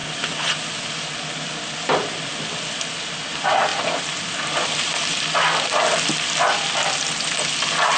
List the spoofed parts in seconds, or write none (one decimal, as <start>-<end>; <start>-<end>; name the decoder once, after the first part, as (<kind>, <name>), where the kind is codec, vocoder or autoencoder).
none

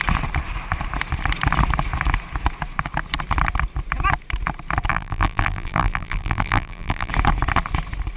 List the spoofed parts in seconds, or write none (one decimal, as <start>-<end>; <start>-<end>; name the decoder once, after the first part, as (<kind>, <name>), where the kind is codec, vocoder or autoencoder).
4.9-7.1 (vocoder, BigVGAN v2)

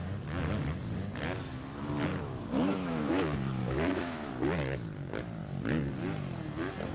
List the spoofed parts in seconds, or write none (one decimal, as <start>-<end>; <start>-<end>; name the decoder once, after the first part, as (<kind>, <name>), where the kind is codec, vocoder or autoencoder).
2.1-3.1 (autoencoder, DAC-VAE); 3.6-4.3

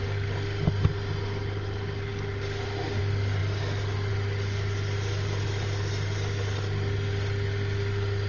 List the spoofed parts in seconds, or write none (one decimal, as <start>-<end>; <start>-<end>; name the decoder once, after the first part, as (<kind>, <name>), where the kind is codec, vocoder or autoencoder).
none

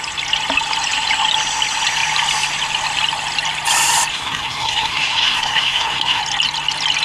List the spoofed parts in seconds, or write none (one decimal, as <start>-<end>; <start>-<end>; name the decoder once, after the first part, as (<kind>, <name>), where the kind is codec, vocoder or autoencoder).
4.1-6.2 (codec, SNAC)

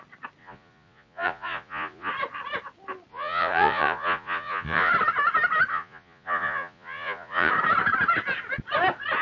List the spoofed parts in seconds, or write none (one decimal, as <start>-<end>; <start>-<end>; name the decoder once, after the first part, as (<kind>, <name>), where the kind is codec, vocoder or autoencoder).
0.4-2.1 (vocoder, Vocos); 3.1-4.9; 5.7-7.5